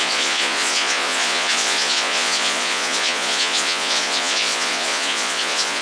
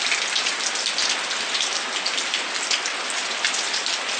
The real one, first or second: second